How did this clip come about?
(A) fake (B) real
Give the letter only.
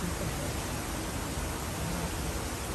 B